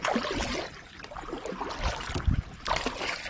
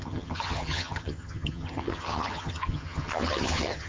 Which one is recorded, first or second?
first